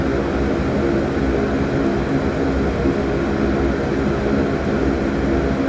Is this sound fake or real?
real